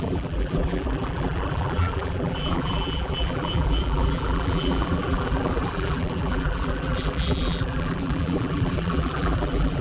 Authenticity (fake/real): fake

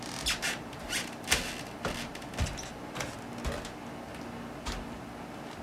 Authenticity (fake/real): real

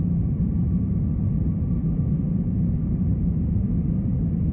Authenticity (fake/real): fake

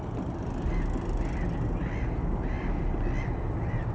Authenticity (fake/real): real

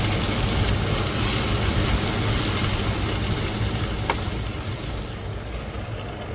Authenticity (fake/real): real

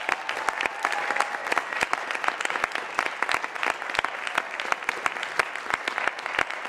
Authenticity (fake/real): real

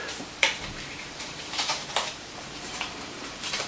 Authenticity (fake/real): fake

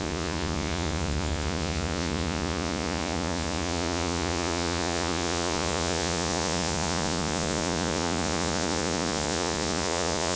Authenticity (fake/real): fake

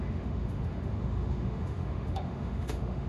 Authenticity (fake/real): fake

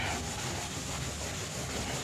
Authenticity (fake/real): real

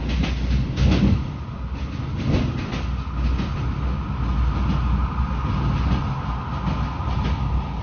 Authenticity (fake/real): real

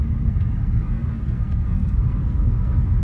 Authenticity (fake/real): fake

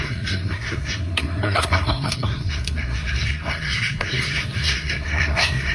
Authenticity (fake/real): fake